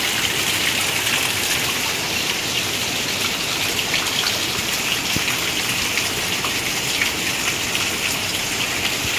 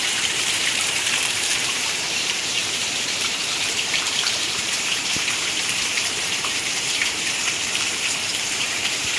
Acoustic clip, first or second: first